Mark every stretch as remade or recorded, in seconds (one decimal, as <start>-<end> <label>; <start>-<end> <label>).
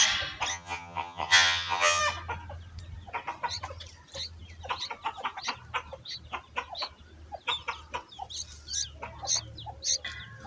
0.0-0.5 recorded; 0.5-2.0 remade; 2.0-10.5 recorded